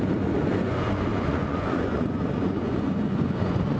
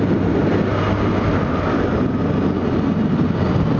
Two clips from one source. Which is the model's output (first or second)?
first